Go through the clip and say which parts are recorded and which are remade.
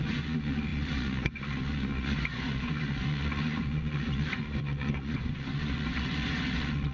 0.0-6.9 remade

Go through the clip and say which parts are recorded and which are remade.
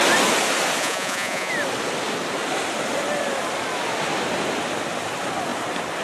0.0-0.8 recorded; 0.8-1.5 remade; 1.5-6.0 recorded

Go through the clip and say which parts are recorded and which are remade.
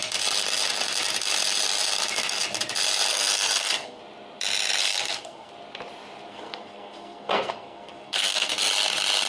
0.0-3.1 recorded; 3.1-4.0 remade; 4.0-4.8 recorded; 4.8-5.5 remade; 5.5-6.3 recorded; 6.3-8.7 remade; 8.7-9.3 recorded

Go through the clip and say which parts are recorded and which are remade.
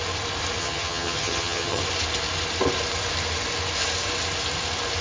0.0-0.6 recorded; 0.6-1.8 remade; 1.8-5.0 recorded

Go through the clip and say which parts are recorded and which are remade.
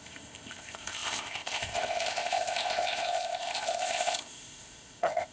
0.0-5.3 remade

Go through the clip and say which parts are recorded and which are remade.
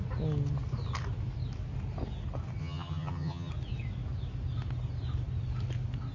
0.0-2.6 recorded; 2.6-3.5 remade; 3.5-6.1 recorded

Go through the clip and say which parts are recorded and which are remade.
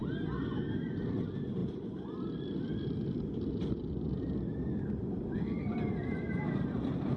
0.0-1.6 recorded; 1.6-5.9 remade; 5.9-7.2 recorded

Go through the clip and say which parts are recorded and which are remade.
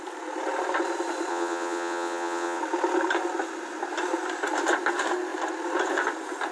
0.0-1.3 recorded; 1.3-2.6 remade; 2.6-6.5 recorded